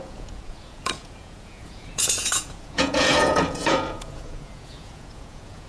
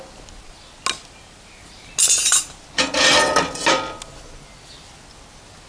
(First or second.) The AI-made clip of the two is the first